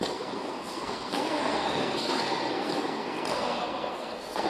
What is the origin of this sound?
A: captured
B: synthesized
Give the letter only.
B